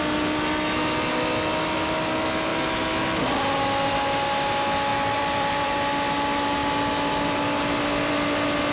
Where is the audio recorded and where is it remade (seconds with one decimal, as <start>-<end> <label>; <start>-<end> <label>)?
0.0-4.9 recorded; 4.9-5.7 remade; 5.7-8.7 recorded